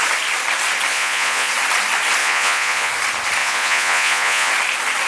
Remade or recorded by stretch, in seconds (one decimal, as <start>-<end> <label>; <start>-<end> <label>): 0.0-0.9 recorded; 0.9-1.5 remade; 1.5-2.2 recorded; 2.2-2.9 remade; 2.9-3.4 recorded; 3.4-4.5 remade; 4.5-5.1 recorded